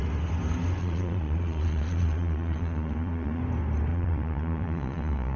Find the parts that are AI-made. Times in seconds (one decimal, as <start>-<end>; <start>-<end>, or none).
0.8-3.4; 3.9-5.4